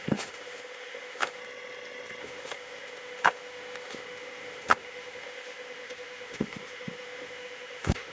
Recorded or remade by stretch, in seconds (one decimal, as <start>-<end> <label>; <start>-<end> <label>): 0.0-1.4 remade; 1.4-2.2 recorded; 2.2-8.1 remade